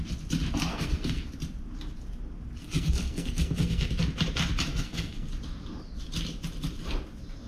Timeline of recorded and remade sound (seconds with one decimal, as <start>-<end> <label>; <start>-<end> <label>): 0.0-0.7 recorded; 0.7-1.3 remade; 1.3-2.6 recorded; 2.6-3.9 remade; 3.9-4.7 recorded; 4.7-5.3 remade; 5.3-7.5 recorded